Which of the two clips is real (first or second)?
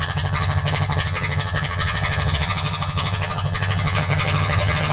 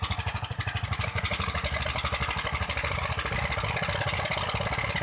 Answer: second